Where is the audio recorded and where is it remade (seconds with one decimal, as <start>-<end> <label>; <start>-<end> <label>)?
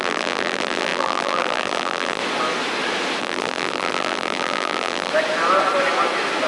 0.0-2.2 remade; 2.2-3.2 recorded; 3.2-5.1 remade; 5.1-6.5 recorded